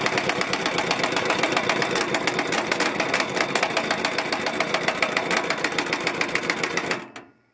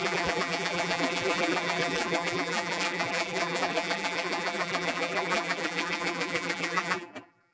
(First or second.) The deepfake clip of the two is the second